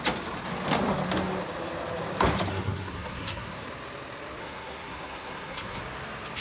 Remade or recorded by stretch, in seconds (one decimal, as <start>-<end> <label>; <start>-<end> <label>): 0.0-2.5 recorded; 2.5-3.6 remade; 3.6-4.4 recorded; 4.4-5.8 remade; 5.8-6.4 recorded